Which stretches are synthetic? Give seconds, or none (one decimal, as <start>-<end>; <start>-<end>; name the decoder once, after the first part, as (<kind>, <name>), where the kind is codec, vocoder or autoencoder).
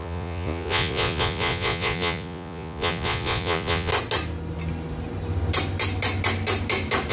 0.0-3.9 (vocoder, Vocos)